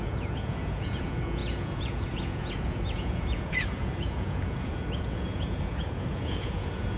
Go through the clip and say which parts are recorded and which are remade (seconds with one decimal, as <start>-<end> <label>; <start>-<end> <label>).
0.0-7.0 remade